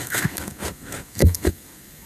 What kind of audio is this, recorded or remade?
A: remade